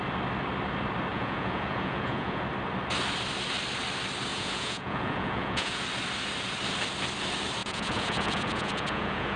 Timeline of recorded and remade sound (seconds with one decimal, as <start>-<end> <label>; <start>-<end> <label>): 0.0-1.1 recorded; 1.1-2.4 remade; 2.4-4.3 recorded; 4.3-5.8 remade; 5.8-7.6 recorded; 7.6-9.4 remade